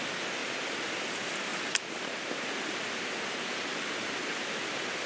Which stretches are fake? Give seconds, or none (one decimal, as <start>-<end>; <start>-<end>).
none